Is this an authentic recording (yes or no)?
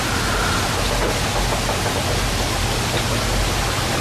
yes